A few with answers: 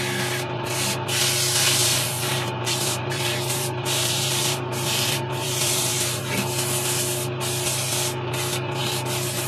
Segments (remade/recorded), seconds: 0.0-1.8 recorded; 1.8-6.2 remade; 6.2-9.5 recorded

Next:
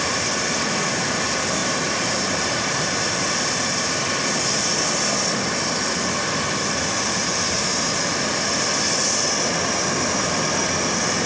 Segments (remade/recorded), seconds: 0.0-1.6 recorded; 1.6-3.9 remade; 3.9-7.2 recorded; 7.2-8.0 remade; 8.0-11.3 recorded

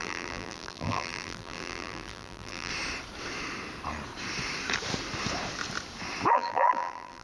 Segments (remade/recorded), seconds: 0.0-2.7 remade; 2.7-6.3 recorded; 6.3-7.2 remade

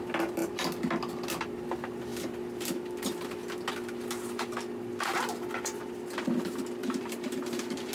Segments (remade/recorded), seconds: 0.0-6.8 recorded; 6.8-7.9 remade

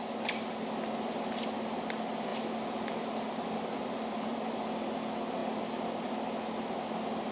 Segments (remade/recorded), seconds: 0.0-2.3 recorded; 2.3-4.6 remade; 4.6-5.4 recorded; 5.4-6.1 remade; 6.1-7.3 recorded